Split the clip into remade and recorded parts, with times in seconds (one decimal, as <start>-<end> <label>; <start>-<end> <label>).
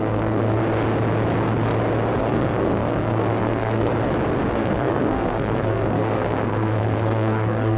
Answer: 0.0-0.6 remade; 0.6-2.2 recorded; 2.2-3.9 remade; 3.9-4.5 recorded; 4.5-7.8 remade